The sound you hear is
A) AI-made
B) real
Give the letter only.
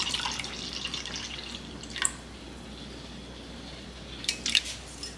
B